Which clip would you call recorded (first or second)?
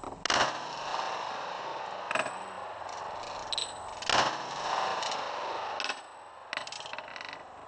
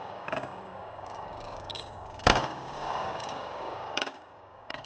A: first